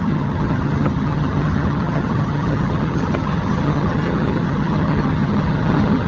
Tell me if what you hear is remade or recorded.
remade